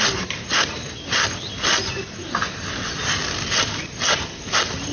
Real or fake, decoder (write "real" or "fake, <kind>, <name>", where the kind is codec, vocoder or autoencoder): real